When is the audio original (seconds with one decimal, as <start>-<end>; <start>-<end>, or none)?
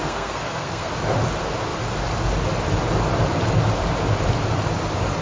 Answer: 0.9-5.2